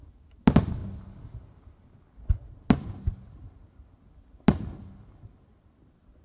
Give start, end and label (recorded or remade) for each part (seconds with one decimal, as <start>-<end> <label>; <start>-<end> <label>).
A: 0.0-6.2 recorded